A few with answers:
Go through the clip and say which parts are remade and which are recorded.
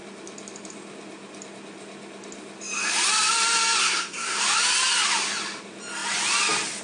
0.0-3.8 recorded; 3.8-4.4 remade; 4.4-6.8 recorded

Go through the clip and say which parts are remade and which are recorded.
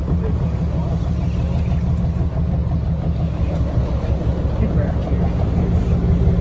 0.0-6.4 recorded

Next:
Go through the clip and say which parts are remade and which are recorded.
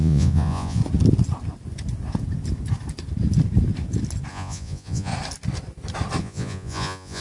0.0-0.8 remade; 0.8-4.3 recorded; 4.3-5.1 remade; 5.1-6.2 recorded; 6.2-7.2 remade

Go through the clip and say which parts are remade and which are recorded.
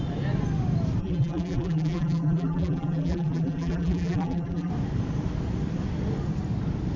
0.0-1.0 recorded; 1.0-4.7 remade; 4.7-7.0 recorded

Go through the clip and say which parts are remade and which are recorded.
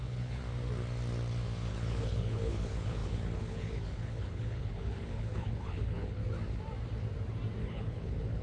0.0-0.4 remade; 0.4-1.7 recorded; 1.7-6.2 remade; 6.2-7.6 recorded; 7.6-8.4 remade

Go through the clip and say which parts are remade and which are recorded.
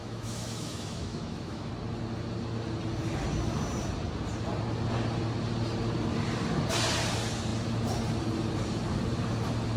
0.0-1.7 remade; 1.7-9.8 recorded